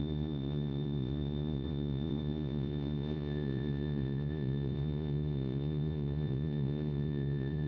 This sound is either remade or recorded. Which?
remade